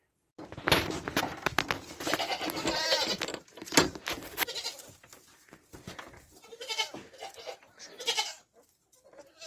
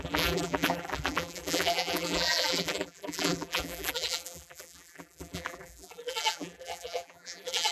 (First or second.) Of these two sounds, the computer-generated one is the second